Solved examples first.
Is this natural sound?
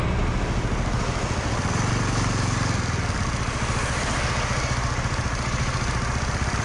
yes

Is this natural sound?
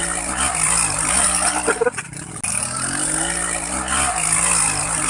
yes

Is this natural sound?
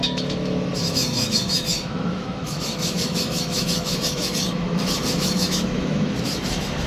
no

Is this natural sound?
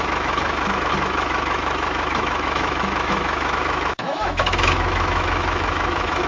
no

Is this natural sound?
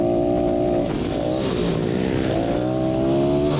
yes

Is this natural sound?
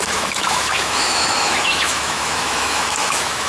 no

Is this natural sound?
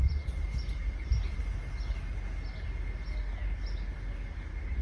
yes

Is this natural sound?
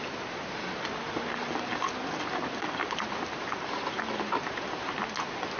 yes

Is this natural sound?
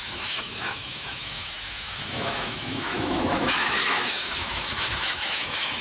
no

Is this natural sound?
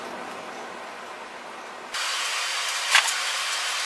yes